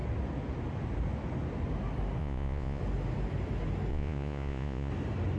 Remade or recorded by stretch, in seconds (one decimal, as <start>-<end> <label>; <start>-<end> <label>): 0.0-2.2 recorded; 2.2-2.8 remade; 2.8-3.9 recorded; 3.9-4.9 remade; 4.9-5.4 recorded